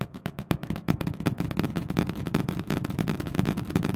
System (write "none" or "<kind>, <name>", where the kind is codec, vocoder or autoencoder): autoencoder, DAC-VAE